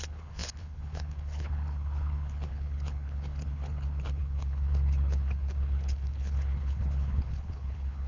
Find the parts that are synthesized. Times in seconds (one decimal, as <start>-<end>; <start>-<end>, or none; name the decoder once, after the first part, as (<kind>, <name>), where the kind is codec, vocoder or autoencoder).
0.0-8.1 (codec, HILCodec)